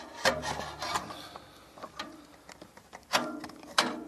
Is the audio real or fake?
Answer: real